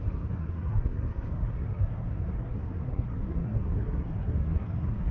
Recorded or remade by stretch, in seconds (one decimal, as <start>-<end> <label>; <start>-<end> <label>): 0.0-5.1 remade